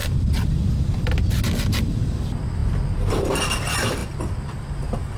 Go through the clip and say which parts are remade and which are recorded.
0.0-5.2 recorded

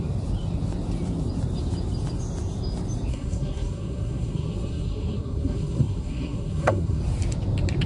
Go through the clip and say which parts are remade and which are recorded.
0.0-3.1 recorded; 3.1-7.0 remade; 7.0-7.9 recorded

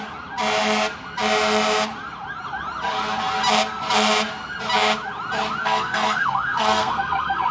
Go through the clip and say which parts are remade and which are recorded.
0.0-5.6 recorded; 5.6-7.5 remade